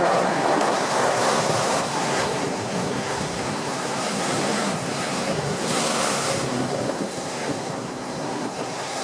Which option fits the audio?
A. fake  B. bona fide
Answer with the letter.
A